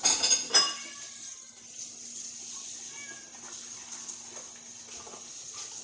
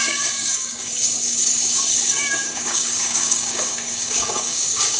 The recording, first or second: first